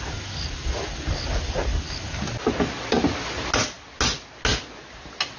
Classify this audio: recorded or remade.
recorded